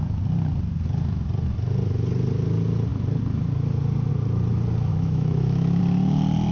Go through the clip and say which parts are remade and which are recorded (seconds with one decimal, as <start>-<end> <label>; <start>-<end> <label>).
0.0-4.9 recorded; 4.9-5.8 remade; 5.8-6.5 recorded